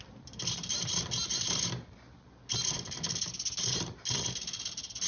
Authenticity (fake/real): real